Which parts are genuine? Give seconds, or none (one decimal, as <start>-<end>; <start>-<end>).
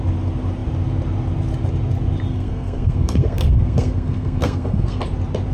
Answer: 0.0-2.3; 5.0-5.5